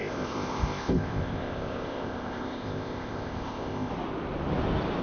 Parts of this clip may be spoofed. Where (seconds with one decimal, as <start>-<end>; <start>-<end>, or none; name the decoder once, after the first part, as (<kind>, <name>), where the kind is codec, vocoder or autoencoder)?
0.0-3.9 (codec, ZipCodec)